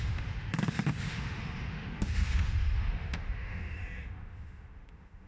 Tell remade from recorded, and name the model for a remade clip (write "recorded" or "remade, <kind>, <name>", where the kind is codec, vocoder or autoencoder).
remade, autoencoder, DAC-VAE